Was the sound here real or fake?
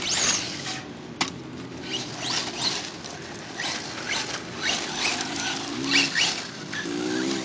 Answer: real